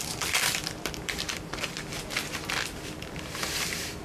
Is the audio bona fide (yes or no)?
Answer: no